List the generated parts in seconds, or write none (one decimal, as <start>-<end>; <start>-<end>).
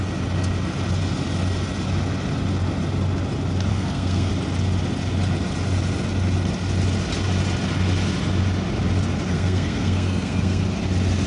3.7-4.3; 9.3-10.6